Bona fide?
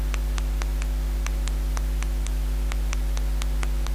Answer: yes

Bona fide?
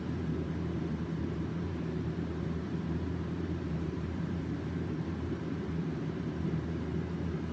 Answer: no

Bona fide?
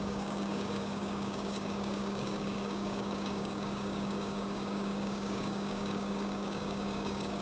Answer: no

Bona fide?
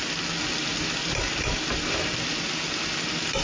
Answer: yes